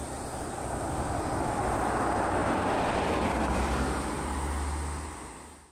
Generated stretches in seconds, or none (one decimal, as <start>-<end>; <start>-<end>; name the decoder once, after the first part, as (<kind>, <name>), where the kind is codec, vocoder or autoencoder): 2.4-2.9 (vocoder, BigVGAN v2)